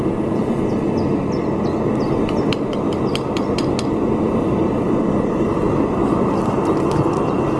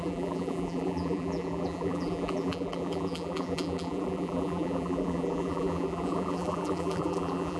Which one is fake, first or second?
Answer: second